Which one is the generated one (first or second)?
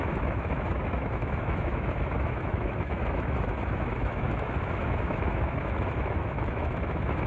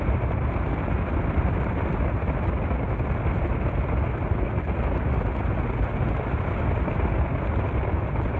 first